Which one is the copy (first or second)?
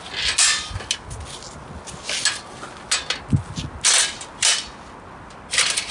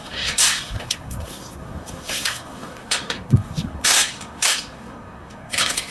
second